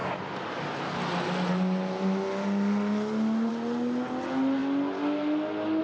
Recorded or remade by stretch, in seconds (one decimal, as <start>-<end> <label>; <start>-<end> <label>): 0.0-5.8 recorded